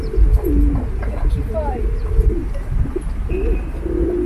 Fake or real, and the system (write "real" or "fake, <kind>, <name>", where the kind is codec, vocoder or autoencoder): real